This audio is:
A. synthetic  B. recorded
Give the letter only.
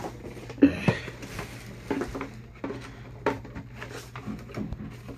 B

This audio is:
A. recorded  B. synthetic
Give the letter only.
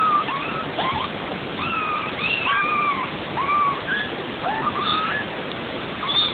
A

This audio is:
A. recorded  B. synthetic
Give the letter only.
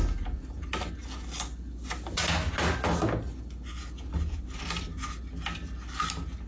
A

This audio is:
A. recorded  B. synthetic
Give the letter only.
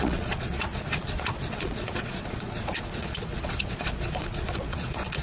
B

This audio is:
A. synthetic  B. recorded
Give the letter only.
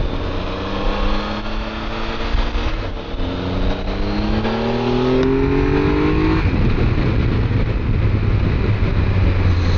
B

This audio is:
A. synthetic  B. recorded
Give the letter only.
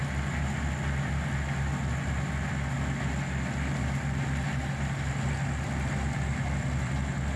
B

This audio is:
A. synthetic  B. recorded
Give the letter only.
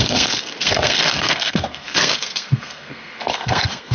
A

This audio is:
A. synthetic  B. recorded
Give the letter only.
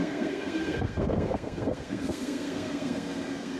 A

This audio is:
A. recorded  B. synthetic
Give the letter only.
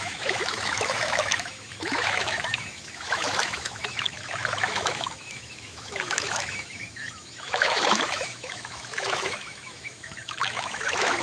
B